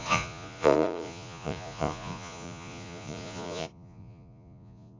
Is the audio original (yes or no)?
no